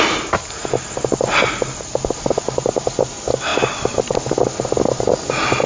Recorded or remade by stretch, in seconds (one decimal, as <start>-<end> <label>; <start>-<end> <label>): 0.0-5.7 recorded